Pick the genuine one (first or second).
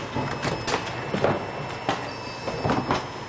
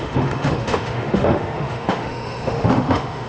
first